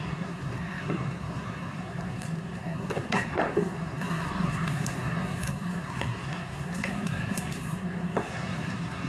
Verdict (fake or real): fake